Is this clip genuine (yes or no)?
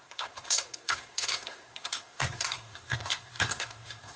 no